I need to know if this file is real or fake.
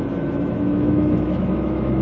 fake